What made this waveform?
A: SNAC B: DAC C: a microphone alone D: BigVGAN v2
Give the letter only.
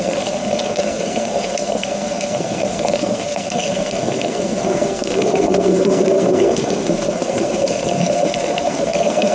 A